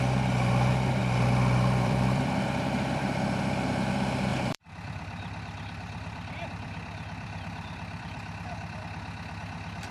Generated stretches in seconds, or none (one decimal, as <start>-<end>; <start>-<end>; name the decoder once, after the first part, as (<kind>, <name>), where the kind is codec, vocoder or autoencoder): 1.0-3.4 (vocoder, BigVGAN v2); 4.3-8.8